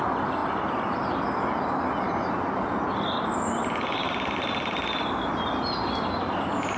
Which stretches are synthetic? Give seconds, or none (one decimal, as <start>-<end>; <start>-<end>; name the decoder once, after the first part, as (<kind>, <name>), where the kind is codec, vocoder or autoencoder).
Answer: none